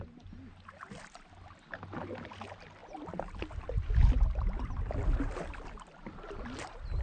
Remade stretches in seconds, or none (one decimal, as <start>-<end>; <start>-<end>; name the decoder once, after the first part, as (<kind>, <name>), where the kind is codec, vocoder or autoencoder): none